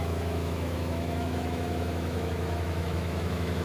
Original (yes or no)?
no